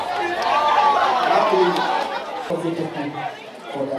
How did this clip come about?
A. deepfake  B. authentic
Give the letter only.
B